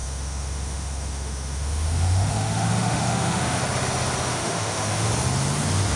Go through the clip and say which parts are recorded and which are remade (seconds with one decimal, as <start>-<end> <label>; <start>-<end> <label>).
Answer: 0.0-3.6 remade; 3.6-4.3 recorded; 4.3-5.1 remade; 5.1-6.0 recorded